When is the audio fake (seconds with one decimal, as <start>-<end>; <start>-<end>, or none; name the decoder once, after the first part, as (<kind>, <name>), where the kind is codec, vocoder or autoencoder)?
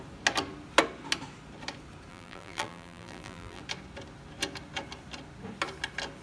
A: 2.1-3.6 (vocoder, BigVGAN v2)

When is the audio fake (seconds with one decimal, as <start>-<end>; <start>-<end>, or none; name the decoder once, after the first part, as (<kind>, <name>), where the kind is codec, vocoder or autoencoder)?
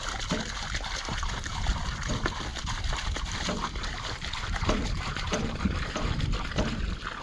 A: 1.1-2.1 (vocoder, BigVGAN v2); 2.5-6.8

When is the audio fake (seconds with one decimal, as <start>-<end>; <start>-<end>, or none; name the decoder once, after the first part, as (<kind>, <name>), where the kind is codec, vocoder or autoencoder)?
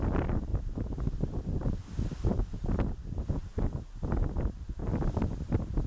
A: 0.5-2.9 (vocoder, BigVGAN v2); 3.5-4.1; 4.8-5.9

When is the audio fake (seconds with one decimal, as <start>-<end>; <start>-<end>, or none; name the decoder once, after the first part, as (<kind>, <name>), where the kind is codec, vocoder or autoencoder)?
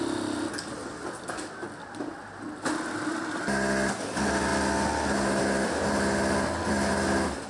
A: 0.8-3.4 (vocoder, BigVGAN v2)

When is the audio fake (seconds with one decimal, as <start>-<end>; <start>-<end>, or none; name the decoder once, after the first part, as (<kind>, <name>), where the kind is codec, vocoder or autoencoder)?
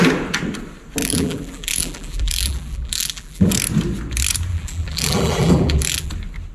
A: 1.0-3.5 (vocoder, BigVGAN v2); 4.5-6.1